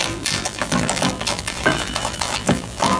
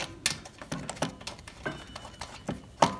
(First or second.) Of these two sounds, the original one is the second